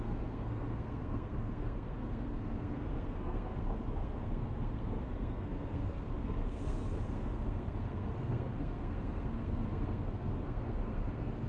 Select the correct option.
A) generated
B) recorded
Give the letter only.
A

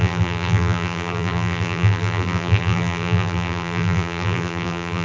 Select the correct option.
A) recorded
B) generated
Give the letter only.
B